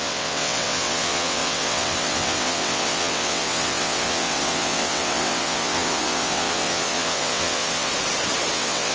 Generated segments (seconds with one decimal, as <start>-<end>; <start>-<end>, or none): 0.0-7.9; 8.5-8.9